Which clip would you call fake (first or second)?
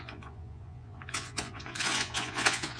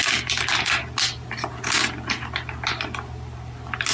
first